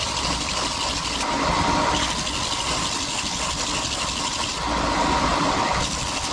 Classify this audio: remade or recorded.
recorded